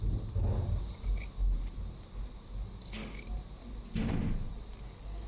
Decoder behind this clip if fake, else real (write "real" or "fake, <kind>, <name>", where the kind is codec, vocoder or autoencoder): real